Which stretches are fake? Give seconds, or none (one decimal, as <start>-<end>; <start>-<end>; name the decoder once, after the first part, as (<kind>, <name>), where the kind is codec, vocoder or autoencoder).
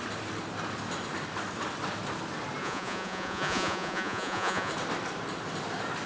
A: 2.6-4.7 (vocoder, Vocos)